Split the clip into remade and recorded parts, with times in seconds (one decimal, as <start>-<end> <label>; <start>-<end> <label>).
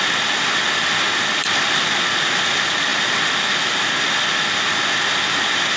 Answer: 0.0-5.8 recorded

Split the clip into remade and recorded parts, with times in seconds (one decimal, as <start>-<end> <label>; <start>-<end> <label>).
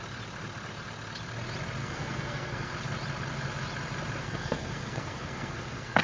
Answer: 0.0-1.8 recorded; 1.8-2.7 remade; 2.7-4.2 recorded; 4.2-6.0 remade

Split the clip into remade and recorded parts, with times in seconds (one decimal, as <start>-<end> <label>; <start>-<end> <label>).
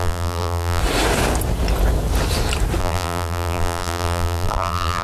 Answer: 0.0-0.8 remade; 0.8-2.8 recorded; 2.8-5.0 remade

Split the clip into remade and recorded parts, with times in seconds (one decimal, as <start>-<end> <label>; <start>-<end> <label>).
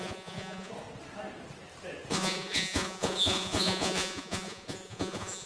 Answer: 0.0-0.7 remade; 0.7-2.1 recorded; 2.1-5.5 remade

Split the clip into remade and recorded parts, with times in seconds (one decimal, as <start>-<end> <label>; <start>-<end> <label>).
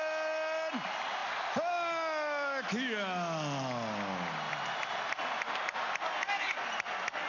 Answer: 0.0-7.3 recorded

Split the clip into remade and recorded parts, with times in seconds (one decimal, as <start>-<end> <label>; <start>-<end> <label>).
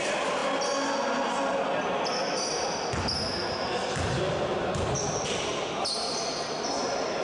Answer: 0.0-4.5 recorded; 4.5-6.3 remade; 6.3-7.2 recorded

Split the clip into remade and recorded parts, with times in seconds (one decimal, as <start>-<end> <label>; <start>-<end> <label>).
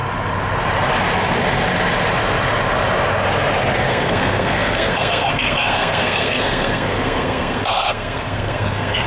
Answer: 0.0-3.9 recorded; 3.9-9.1 remade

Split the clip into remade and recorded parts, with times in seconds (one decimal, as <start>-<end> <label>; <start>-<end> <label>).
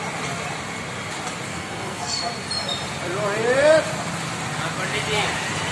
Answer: 0.0-1.5 recorded; 1.5-2.2 remade; 2.2-5.7 recorded